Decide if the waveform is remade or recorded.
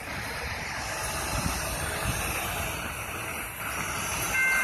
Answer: recorded